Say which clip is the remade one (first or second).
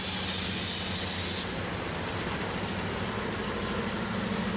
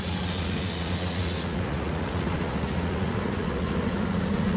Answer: second